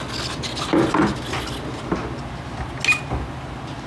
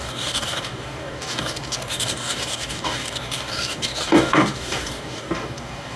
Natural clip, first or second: first